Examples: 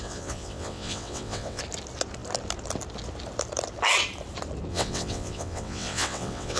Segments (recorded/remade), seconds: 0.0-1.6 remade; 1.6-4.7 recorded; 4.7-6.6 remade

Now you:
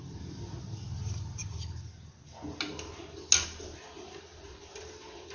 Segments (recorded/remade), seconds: 0.0-5.3 recorded